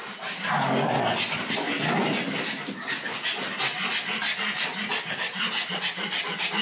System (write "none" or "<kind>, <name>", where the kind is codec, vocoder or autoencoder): none